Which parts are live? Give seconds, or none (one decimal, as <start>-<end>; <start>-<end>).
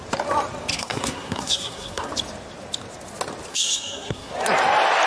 0.0-0.7; 2.1-3.5; 4.3-5.1